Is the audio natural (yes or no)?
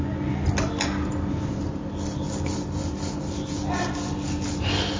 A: yes